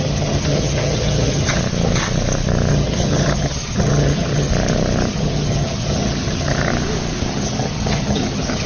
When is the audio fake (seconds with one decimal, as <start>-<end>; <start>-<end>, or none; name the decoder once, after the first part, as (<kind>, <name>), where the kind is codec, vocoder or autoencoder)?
0.0-1.6 (vocoder, HiFi-GAN); 2.7-4.5; 5.1-6.7; 7.3-8.7